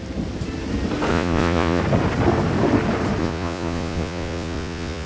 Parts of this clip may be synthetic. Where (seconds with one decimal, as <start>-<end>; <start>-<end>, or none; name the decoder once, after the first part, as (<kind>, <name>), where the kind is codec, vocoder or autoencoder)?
1.1-1.8 (vocoder, Vocos); 3.2-5.1